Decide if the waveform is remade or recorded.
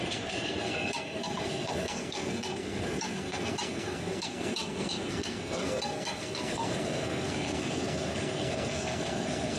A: remade